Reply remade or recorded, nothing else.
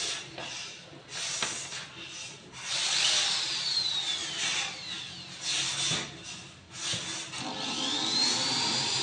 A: recorded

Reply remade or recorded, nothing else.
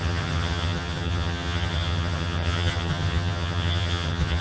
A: remade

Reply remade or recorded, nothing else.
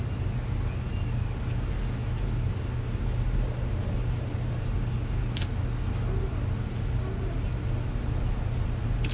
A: recorded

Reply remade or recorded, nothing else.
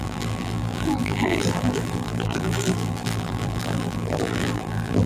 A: remade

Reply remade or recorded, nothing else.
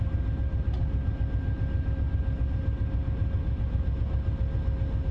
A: recorded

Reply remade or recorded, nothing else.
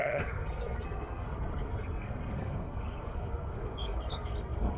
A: remade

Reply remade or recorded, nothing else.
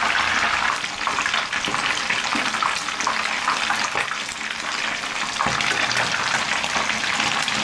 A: recorded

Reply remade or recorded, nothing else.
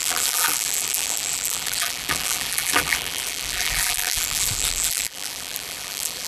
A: remade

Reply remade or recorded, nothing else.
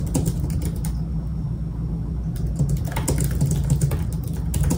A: recorded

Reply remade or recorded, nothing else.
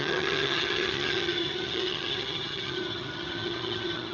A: remade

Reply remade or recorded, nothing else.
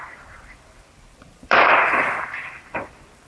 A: remade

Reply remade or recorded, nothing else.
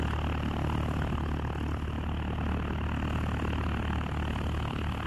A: recorded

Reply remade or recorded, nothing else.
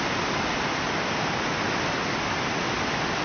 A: recorded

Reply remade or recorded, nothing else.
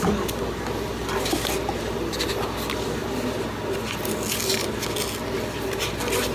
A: recorded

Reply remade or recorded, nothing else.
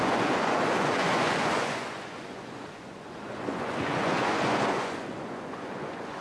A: remade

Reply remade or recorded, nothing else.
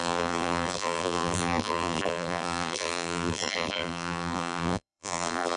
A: remade